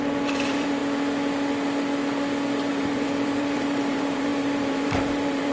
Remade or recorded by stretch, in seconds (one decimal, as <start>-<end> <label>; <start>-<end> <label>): 0.0-0.8 remade; 0.8-2.7 recorded; 2.7-5.5 remade